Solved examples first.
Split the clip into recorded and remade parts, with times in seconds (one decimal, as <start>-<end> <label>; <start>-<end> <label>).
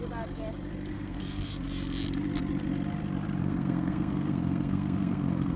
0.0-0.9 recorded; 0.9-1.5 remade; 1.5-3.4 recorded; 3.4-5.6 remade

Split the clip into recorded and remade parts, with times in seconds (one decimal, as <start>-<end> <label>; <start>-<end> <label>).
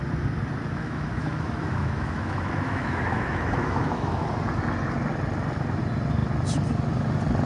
0.0-0.8 recorded; 0.8-4.3 remade; 4.3-7.5 recorded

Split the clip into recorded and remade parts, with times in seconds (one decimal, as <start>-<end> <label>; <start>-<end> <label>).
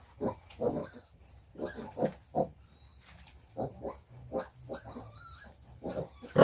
0.0-0.8 recorded; 0.8-1.3 remade; 1.3-6.4 recorded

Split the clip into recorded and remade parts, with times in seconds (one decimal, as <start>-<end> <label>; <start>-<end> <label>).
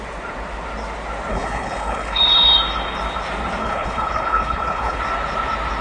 0.0-1.3 recorded; 1.3-2.2 remade; 2.2-3.6 recorded; 3.6-5.0 remade; 5.0-5.8 recorded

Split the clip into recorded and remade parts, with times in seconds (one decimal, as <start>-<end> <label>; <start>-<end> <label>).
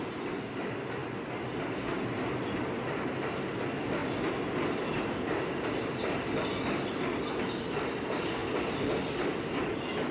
0.0-10.1 recorded